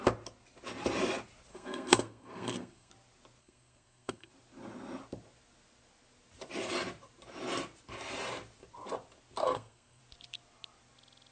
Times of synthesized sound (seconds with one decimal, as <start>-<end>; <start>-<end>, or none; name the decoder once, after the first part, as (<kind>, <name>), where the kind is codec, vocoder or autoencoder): 1.5-2.9 (codec, SNAC); 3.4-4.3; 9.4-10.0